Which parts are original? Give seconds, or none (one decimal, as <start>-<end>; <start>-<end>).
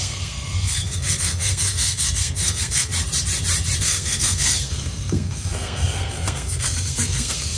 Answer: 2.9-3.8